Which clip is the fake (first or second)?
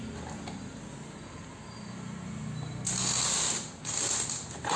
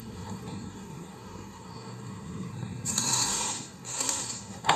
second